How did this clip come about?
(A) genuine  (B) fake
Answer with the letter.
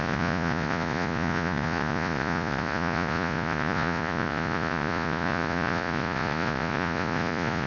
B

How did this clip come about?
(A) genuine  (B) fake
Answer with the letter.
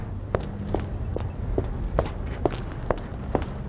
A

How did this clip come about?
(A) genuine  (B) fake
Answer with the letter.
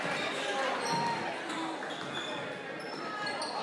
A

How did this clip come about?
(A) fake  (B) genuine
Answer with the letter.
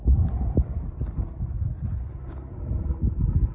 B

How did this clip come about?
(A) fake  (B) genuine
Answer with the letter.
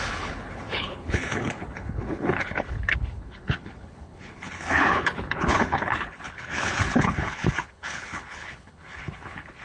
A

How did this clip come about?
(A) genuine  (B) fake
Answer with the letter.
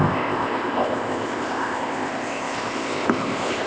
B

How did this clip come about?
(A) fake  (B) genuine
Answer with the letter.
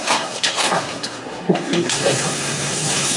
A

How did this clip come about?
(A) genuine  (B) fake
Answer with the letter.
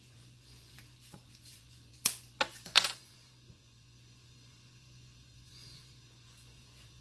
B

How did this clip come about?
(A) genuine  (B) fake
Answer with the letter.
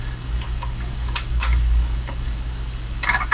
B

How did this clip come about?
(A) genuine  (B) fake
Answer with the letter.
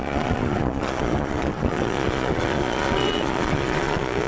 B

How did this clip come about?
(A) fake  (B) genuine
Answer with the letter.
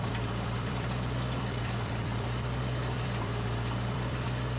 A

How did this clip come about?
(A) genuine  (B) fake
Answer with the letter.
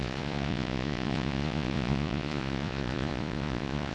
B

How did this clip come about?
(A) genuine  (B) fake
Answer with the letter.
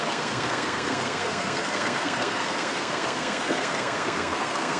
B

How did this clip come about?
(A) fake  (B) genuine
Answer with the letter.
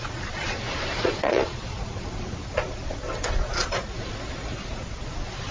A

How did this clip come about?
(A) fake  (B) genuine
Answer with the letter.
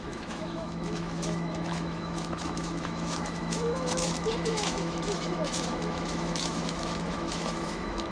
A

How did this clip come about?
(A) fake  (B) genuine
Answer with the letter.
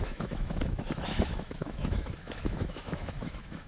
A